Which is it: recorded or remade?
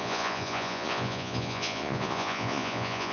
remade